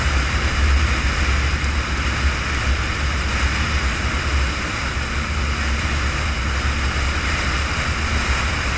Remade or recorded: recorded